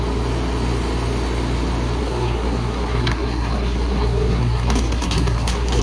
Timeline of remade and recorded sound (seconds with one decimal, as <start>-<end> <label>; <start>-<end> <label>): 0.0-2.0 recorded; 2.0-5.8 remade